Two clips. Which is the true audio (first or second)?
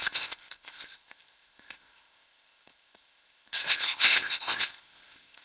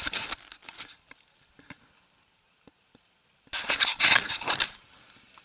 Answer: second